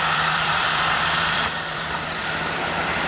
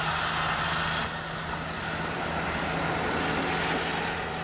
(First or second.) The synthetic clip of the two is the first